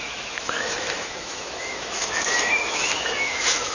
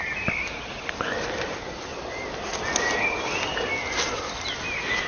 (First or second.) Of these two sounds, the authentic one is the second